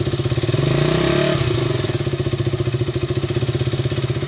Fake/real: real